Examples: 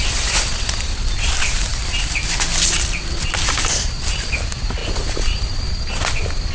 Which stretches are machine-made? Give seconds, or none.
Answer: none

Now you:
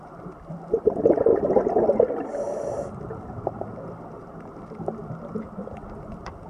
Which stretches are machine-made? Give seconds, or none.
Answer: 0.0-1.3 (vocoder, BigVGAN v2); 2.7-6.5

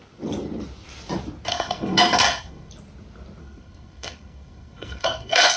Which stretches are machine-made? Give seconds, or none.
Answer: 1.5-2.7 (codec, SNAC); 3.4-5.6

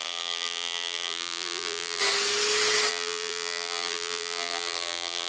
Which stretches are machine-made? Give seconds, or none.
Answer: 0.0-2.0 (vocoder, BigVGAN v2); 2.9-5.3